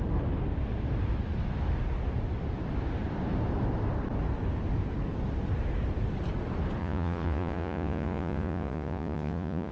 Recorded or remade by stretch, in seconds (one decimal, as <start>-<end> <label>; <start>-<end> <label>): 0.0-6.8 recorded; 6.8-9.7 remade